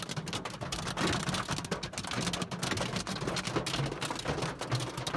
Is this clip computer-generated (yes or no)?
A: no